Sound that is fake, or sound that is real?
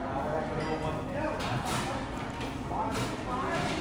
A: real